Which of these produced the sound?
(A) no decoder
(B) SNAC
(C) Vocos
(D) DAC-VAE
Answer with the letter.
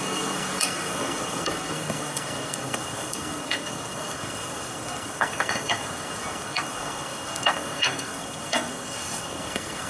B